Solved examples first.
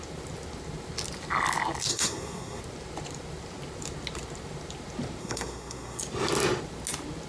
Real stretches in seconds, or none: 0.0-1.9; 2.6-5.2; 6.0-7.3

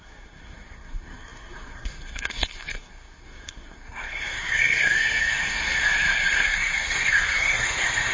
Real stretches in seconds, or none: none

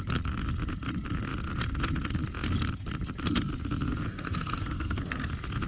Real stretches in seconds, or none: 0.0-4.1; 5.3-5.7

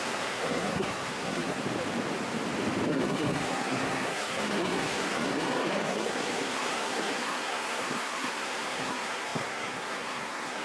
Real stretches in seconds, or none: 1.6-2.9